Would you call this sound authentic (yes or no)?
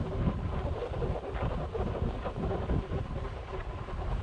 yes